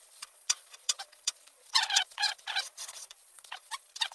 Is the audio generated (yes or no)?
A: yes